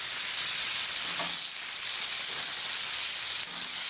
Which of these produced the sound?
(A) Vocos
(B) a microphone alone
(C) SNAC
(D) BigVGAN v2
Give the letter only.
B